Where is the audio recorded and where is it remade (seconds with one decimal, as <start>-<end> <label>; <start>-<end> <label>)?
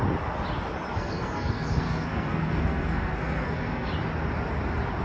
0.0-0.9 recorded; 0.9-3.9 remade; 3.9-5.0 recorded